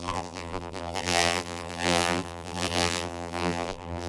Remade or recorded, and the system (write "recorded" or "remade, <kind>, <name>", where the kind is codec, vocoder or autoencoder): remade, vocoder, BigVGAN v2